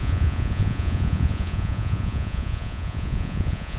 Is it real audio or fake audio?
fake